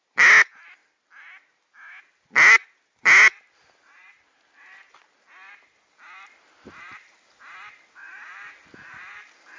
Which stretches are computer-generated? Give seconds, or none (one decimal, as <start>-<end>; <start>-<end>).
none